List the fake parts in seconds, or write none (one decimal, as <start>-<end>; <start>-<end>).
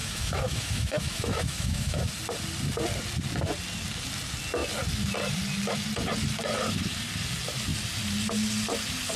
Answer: 0.0-2.1